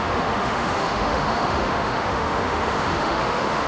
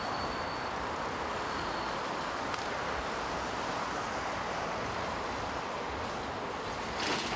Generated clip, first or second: first